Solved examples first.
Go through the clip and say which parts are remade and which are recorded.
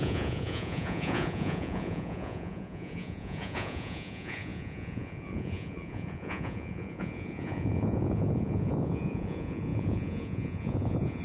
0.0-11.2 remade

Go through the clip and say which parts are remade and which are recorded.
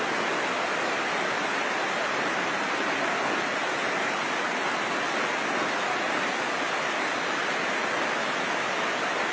0.0-9.3 recorded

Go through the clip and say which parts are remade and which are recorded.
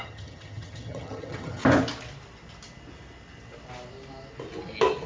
0.0-1.6 remade; 1.6-5.1 recorded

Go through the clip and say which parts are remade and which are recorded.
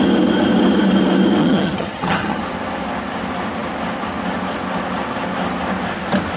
0.0-1.4 recorded; 1.4-2.4 remade; 2.4-6.4 recorded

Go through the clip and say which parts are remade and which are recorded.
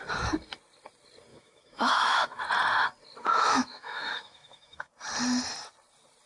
0.0-1.3 recorded; 1.3-2.4 remade; 2.4-3.3 recorded; 3.3-4.9 remade; 4.9-6.3 recorded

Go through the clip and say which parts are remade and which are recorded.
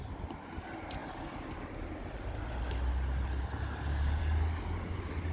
0.0-5.3 recorded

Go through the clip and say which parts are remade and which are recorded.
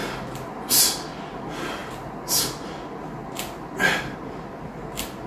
0.0-5.3 recorded